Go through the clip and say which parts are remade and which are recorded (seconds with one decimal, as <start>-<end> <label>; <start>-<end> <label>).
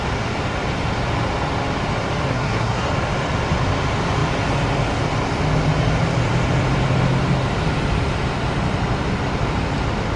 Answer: 0.0-2.3 recorded; 2.3-2.9 remade; 2.9-10.2 recorded